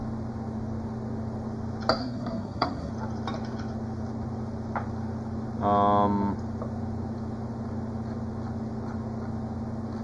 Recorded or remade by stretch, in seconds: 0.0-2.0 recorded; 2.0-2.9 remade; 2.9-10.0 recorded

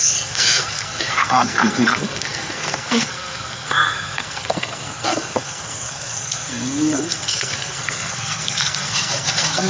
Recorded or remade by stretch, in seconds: 0.0-9.7 remade

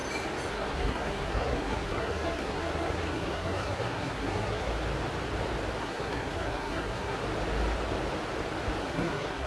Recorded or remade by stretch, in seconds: 0.0-0.5 recorded; 0.5-4.7 remade; 4.7-5.8 recorded; 5.8-7.2 remade; 7.2-8.8 recorded; 8.8-9.5 remade